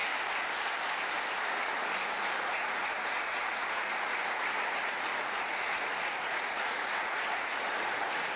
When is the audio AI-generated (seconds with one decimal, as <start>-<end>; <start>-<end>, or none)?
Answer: 2.5-8.4

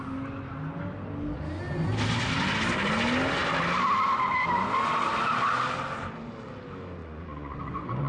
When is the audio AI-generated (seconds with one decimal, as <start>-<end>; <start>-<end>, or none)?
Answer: 7.0-8.1

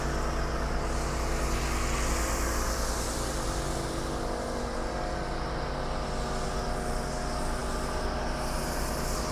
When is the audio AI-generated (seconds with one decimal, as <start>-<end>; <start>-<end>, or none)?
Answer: none

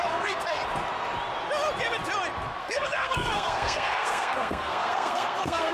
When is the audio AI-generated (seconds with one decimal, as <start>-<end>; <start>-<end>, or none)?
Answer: 0.0-0.6; 2.6-5.7

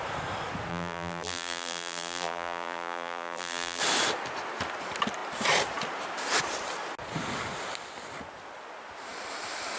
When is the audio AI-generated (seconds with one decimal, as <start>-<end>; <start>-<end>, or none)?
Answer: 0.7-3.8

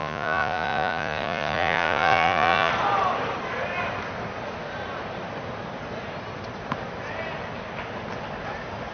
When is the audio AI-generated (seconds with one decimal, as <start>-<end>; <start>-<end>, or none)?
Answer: 0.0-2.7

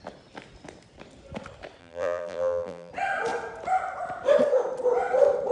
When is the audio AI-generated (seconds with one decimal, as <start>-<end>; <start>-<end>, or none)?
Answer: 1.8-2.9